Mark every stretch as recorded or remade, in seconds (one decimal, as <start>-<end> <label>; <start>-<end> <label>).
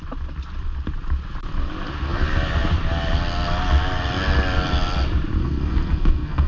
0.0-5.4 recorded; 5.4-6.5 remade